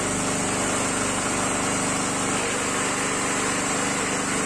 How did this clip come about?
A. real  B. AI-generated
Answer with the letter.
A